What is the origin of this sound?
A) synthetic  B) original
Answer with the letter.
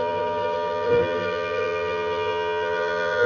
A